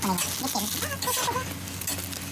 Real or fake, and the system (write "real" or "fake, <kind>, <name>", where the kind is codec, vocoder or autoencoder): real